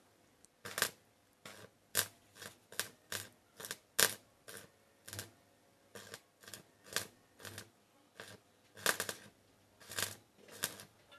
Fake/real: real